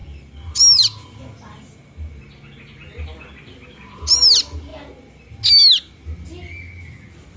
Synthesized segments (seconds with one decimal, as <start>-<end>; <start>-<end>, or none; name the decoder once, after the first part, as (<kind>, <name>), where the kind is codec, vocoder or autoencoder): none